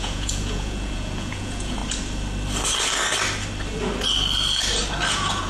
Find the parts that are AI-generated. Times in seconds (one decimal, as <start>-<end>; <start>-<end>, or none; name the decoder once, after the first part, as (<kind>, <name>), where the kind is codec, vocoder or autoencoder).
0.0-1.8 (vocoder, Vocos); 5.1-5.5